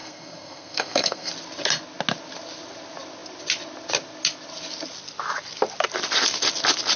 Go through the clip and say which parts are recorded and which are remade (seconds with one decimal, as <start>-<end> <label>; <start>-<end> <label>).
0.0-1.3 remade; 1.3-7.0 recorded